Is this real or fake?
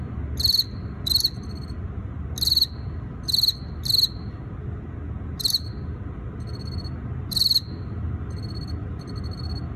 real